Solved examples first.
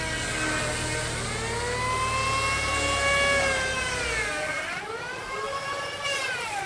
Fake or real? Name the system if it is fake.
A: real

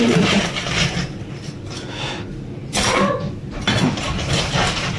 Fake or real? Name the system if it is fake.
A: real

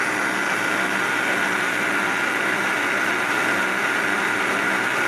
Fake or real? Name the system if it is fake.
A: real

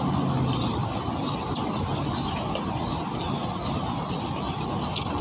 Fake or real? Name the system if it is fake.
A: real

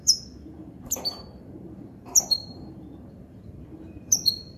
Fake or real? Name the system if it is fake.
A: fake, vocoder, BigVGAN v2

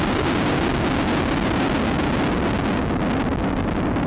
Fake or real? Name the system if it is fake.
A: real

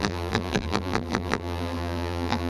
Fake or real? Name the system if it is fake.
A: fake, vocoder, BigVGAN v2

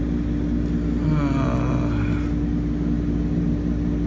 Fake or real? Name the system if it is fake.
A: real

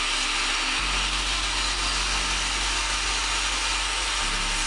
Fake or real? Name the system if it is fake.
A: real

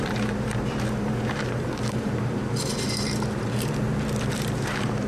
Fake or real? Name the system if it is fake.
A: fake, vocoder, BigVGAN v2